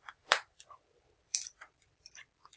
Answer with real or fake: fake